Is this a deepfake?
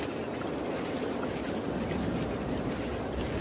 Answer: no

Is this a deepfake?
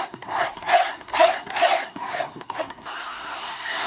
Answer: yes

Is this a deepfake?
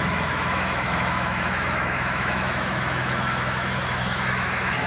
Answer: yes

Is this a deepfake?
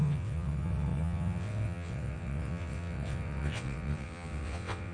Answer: yes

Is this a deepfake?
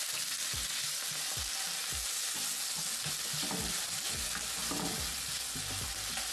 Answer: no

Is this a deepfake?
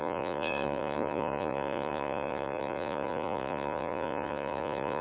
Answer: yes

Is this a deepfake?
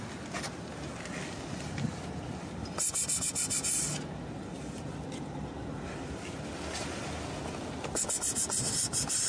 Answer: no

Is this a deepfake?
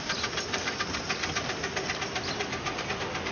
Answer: no